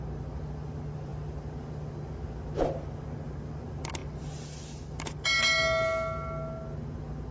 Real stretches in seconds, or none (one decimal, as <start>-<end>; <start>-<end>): 0.0-7.3